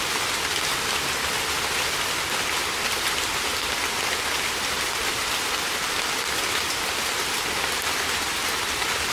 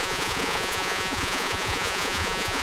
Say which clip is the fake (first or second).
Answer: second